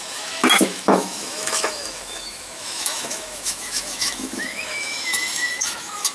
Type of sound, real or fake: fake